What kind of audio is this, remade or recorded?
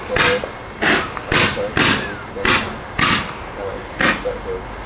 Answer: recorded